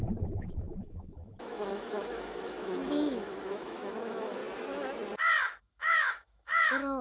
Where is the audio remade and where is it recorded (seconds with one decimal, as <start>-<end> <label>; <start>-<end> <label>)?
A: 0.0-4.4 remade; 4.4-5.6 recorded; 5.6-7.0 remade